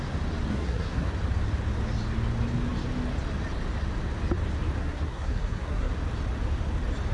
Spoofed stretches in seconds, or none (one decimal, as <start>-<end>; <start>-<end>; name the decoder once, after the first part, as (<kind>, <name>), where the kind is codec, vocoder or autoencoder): 0.5-1.1 (codec, SNAC); 4.8-5.9